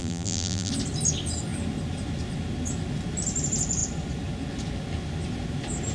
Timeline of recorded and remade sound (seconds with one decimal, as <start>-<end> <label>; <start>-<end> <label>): 0.0-0.7 remade; 0.7-5.9 recorded

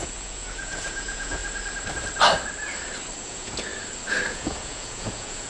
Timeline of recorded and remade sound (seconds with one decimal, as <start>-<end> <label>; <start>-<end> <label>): 0.0-1.4 remade; 1.4-3.2 recorded; 3.2-3.7 remade; 3.7-4.3 recorded; 4.3-5.5 remade

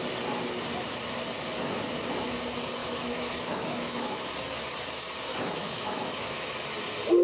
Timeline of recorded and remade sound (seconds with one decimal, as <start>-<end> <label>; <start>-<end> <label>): 0.0-2.8 recorded; 2.8-4.3 remade; 4.3-5.3 recorded; 5.3-6.4 remade; 6.4-7.2 recorded

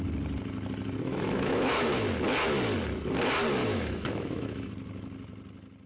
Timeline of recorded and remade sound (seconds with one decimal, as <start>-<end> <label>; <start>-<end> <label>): 0.0-1.1 recorded; 1.1-2.0 remade; 2.0-3.6 recorded; 3.6-4.7 remade; 4.7-5.9 recorded

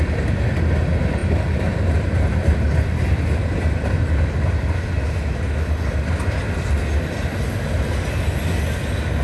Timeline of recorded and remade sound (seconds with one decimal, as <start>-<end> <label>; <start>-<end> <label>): 0.0-9.2 recorded